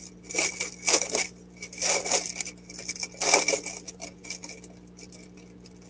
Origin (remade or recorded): recorded